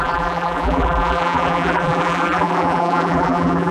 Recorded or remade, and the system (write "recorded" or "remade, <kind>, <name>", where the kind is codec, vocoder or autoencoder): remade, vocoder, BigVGAN v2